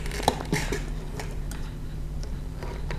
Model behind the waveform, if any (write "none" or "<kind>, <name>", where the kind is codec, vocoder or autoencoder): vocoder, BigVGAN v2